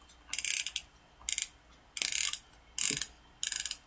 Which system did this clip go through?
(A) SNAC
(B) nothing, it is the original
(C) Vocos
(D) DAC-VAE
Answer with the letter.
B